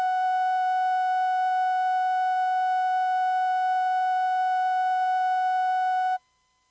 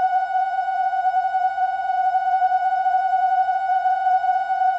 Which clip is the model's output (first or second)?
second